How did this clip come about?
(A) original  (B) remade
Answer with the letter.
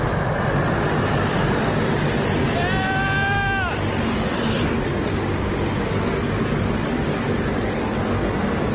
A